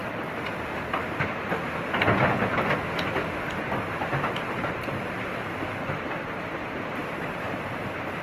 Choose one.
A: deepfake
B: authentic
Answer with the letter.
B